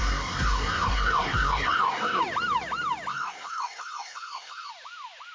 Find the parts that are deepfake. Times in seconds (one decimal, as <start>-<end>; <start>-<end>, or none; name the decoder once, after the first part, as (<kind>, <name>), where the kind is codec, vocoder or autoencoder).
0.0-2.2 (codec, SNAC); 3.1-4.7